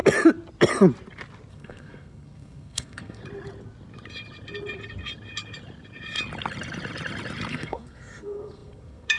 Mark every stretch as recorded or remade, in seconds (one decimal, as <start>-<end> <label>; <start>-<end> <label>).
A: 0.0-1.5 recorded; 1.5-3.2 remade; 3.2-7.5 recorded; 7.5-9.2 remade